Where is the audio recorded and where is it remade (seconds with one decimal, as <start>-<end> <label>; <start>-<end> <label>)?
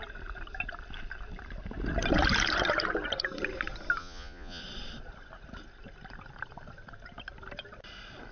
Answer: 0.0-4.0 recorded; 4.0-4.6 remade; 4.6-8.3 recorded